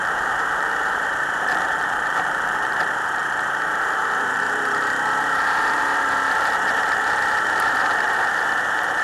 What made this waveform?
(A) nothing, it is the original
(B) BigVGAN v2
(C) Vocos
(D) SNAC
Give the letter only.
B